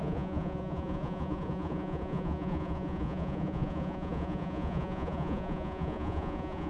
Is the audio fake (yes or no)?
yes